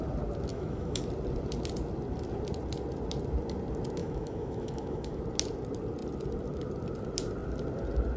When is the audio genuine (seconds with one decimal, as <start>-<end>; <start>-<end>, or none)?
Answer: 0.0-0.5; 1.0-4.0; 5.2-8.2